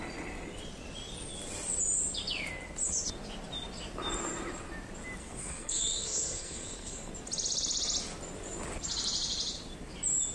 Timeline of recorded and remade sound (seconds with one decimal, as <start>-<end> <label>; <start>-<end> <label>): 0.0-5.2 recorded; 5.2-7.1 remade; 7.1-10.3 recorded

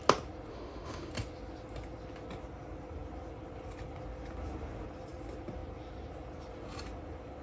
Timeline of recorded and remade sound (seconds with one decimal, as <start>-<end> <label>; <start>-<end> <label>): 0.0-0.5 recorded; 0.5-1.1 remade; 1.1-7.4 recorded

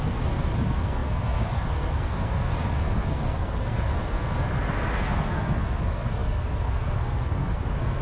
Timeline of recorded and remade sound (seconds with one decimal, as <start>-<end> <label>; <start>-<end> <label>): 0.0-8.0 remade

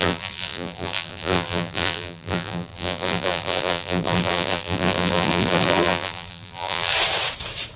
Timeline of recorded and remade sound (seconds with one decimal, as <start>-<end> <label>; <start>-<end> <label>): 0.0-6.9 remade; 6.9-7.8 recorded